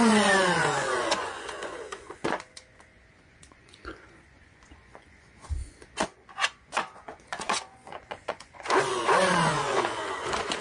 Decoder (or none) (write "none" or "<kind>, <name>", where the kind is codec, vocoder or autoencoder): vocoder, Vocos